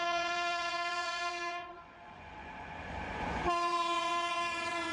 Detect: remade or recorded remade